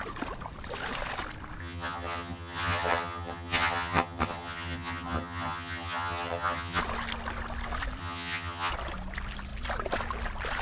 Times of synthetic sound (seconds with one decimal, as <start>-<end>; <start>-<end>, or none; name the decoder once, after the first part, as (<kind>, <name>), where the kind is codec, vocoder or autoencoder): 1.6-6.8 (vocoder, HiFi-GAN); 8.0-8.7

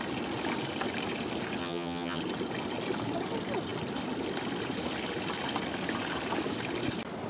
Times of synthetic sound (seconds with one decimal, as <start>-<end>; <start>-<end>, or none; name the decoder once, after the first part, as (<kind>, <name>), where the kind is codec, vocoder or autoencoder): 1.6-2.2 (vocoder, HiFi-GAN)

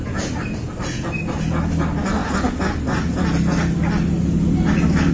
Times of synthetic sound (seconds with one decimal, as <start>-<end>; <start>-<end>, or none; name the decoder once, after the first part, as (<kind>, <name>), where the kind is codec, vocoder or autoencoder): none